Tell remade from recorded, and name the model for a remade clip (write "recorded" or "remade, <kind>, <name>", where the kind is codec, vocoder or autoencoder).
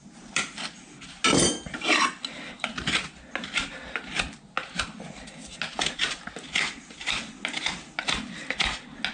recorded